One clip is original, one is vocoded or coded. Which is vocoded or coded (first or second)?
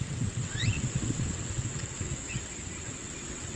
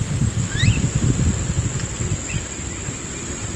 first